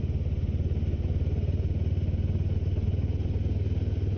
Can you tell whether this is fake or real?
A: real